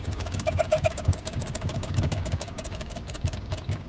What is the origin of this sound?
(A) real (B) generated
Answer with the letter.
B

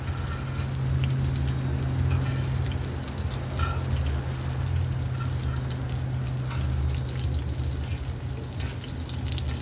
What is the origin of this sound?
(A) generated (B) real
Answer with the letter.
B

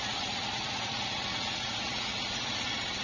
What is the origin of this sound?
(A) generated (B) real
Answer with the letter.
A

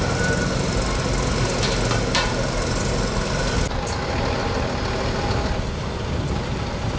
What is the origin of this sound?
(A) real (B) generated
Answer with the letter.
A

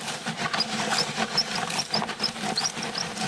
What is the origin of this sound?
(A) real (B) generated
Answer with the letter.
A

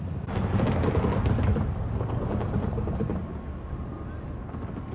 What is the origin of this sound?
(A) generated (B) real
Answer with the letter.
B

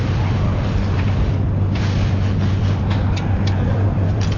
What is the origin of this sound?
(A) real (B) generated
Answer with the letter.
A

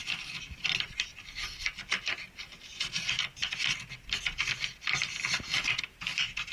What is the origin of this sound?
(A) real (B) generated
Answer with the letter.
A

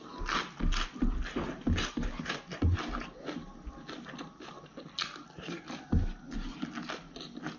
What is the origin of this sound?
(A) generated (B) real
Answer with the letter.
B